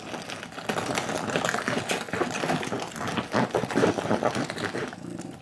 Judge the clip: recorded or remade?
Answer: recorded